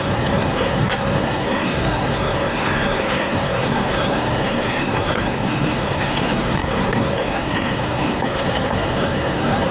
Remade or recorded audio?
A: remade